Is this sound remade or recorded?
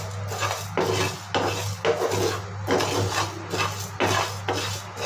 recorded